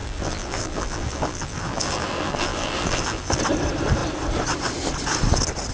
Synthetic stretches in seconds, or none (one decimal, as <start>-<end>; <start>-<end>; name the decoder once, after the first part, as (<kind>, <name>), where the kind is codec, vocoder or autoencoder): 0.0-3.4 (vocoder, BigVGAN v2)